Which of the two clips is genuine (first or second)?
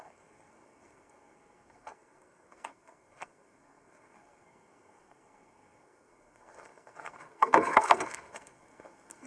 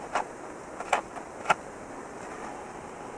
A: second